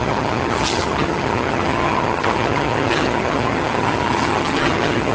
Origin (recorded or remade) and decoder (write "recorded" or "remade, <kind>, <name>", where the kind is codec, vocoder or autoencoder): remade, vocoder, HiFi-GAN